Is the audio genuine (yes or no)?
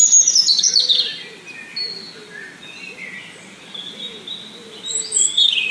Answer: yes